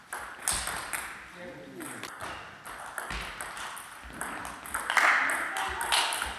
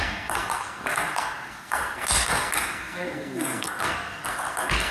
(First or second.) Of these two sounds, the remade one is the second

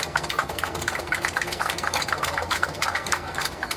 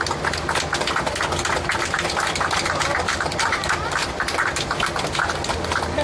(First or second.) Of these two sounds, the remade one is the first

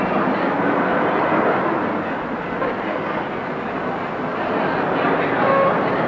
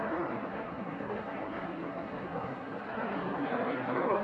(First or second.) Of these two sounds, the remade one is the second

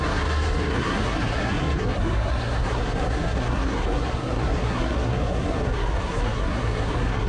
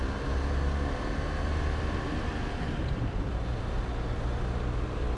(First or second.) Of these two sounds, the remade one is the first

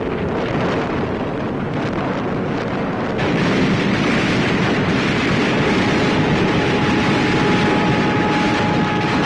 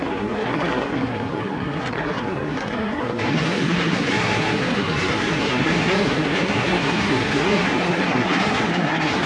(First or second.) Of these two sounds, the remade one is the second